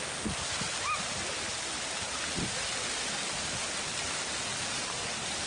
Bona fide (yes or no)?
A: yes